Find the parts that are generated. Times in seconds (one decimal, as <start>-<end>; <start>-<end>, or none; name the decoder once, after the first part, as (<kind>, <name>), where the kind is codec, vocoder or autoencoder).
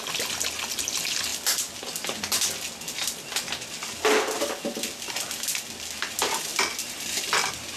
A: none